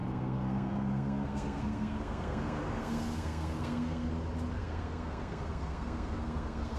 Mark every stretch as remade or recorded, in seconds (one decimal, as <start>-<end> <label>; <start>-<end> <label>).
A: 0.0-4.1 remade; 4.1-4.6 recorded; 4.6-6.8 remade